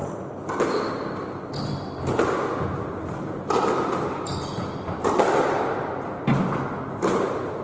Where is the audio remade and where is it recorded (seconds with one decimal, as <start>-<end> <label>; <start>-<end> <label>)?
0.0-7.6 recorded